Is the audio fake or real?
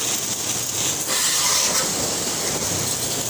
real